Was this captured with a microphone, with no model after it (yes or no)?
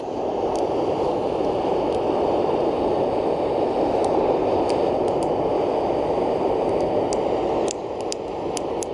yes